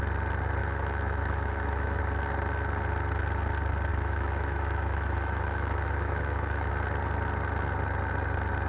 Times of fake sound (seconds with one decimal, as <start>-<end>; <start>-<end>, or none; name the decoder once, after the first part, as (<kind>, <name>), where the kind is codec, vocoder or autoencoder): 0.6-2.0 (autoencoder, DAC-VAE); 3.9-6.7

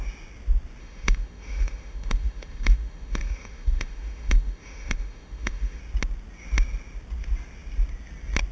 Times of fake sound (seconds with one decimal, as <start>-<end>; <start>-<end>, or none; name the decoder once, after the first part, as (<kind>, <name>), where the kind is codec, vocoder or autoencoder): 0.8-5.8 (autoencoder, DAC-VAE)

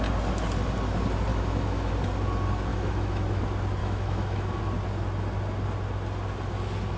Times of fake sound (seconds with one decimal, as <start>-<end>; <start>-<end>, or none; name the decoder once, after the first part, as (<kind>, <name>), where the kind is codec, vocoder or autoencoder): 1.3-1.9 (autoencoder, DAC-VAE); 2.7-3.4; 3.8-4.6